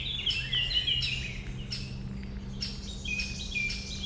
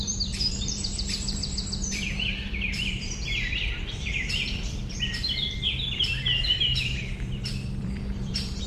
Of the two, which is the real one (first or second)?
first